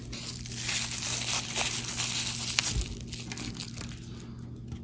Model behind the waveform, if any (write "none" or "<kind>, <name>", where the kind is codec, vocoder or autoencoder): none